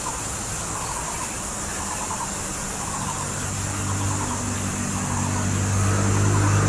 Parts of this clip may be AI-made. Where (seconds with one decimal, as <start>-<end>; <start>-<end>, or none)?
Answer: none